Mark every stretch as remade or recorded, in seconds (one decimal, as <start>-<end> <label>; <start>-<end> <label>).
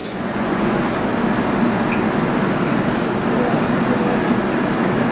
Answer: 0.0-0.8 remade; 0.8-5.1 recorded